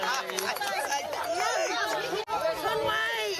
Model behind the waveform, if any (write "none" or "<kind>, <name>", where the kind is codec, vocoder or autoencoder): none